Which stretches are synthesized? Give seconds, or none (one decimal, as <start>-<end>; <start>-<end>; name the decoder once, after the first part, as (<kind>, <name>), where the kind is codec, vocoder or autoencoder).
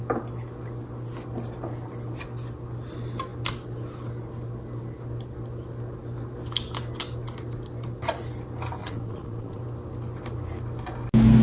8.8-9.6 (vocoder, Vocos)